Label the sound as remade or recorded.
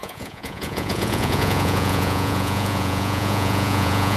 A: remade